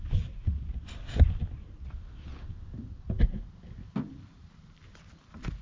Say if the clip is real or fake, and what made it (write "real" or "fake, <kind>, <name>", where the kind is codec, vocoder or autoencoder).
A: real